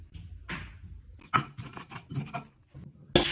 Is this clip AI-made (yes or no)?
no